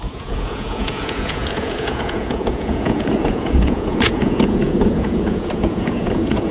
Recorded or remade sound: remade